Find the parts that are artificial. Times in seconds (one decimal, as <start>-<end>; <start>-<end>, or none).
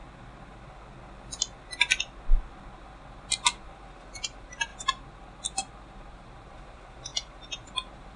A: 3.8-4.7; 6.1-8.2